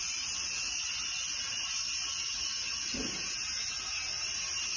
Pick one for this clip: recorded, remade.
recorded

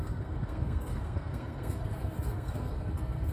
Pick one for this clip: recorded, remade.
remade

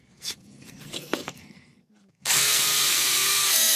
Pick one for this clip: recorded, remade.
remade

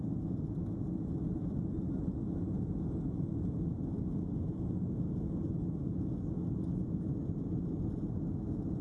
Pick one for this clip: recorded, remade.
recorded